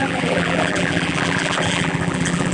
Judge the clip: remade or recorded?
remade